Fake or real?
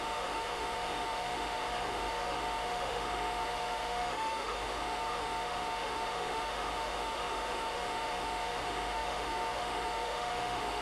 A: fake